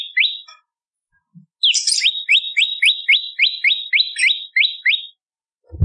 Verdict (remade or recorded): recorded